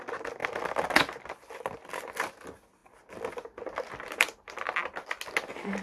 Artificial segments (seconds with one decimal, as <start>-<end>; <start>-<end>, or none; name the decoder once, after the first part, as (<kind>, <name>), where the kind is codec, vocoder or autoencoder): none